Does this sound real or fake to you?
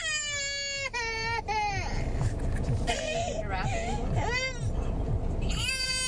real